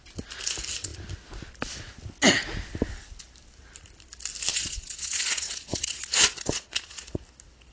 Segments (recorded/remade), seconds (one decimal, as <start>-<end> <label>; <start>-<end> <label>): 0.0-4.5 recorded; 4.5-7.2 remade; 7.2-7.7 recorded